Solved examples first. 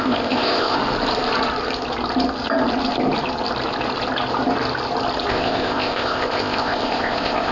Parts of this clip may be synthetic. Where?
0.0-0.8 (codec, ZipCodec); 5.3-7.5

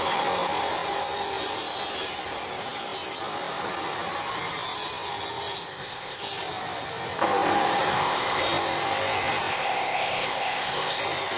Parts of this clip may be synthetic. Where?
5.7-6.2 (codec, ZipCodec); 7.9-8.4; 9.5-11.0

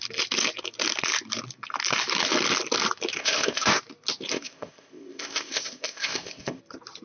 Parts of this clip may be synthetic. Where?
3.2-3.8 (codec, ZipCodec); 4.3-6.6

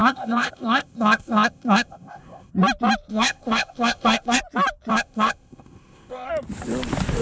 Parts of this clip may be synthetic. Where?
0.0-2.5 (codec, ZipCodec); 3.1-4.4; 4.9-6.3

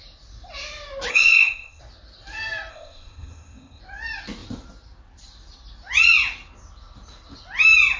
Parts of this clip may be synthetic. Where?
1.1-1.8 (codec, ZipCodec); 2.7-3.8

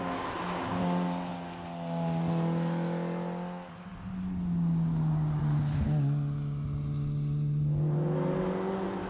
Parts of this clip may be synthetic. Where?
none

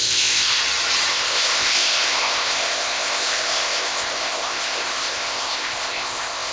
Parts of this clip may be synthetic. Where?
0.0-0.6 (codec, ZipCodec); 1.1-6.5